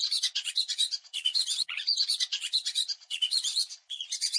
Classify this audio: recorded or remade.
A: remade